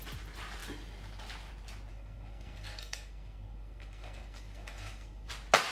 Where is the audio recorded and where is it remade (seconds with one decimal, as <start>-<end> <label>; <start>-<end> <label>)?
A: 0.0-1.9 recorded; 1.9-5.3 remade; 5.3-5.7 recorded